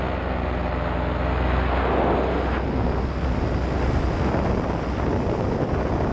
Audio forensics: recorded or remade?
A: recorded